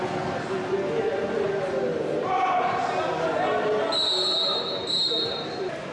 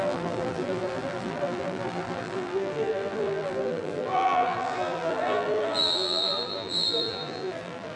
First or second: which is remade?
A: second